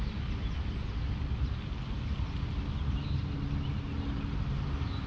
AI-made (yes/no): no